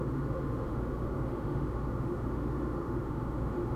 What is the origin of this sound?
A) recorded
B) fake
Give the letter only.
B